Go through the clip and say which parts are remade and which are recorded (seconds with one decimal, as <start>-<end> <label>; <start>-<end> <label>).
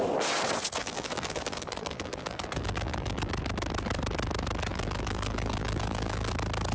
0.0-0.8 recorded; 0.8-3.3 remade; 3.3-4.7 recorded; 4.7-6.3 remade; 6.3-6.7 recorded